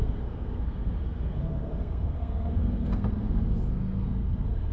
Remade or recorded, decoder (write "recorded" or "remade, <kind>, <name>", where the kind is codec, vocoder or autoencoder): remade, codec, SNAC